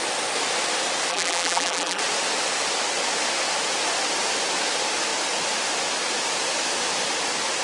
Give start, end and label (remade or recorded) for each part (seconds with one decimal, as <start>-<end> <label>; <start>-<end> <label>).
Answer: 0.0-1.1 recorded; 1.1-2.0 remade; 2.0-7.6 recorded